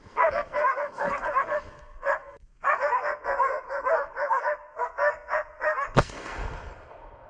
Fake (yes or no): yes